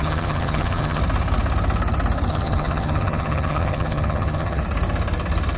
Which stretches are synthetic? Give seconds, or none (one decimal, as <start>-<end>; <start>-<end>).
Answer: 0.0-1.0; 2.3-4.6